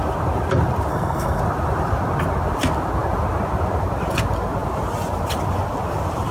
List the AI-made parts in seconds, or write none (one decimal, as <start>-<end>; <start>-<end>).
0.9-1.4